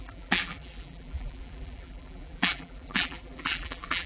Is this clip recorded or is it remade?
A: remade